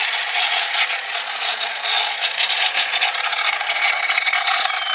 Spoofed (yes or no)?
yes